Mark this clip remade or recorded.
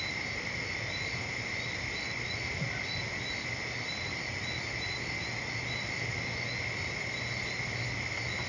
recorded